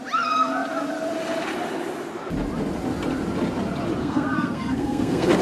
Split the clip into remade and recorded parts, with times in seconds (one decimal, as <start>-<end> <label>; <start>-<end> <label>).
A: 0.0-4.0 recorded; 4.0-5.4 remade